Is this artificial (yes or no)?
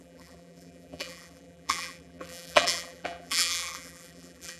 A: yes